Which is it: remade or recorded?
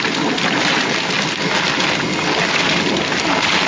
recorded